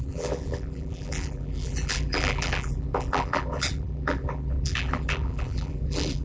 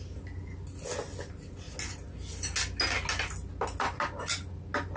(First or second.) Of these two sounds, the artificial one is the first